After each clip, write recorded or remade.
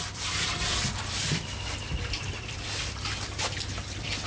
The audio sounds remade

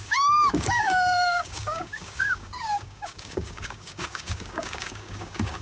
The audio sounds remade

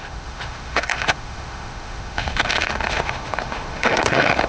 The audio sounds remade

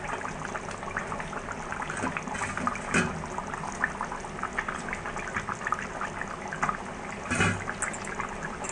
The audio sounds recorded